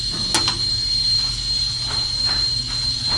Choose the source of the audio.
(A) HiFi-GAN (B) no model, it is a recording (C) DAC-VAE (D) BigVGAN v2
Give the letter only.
B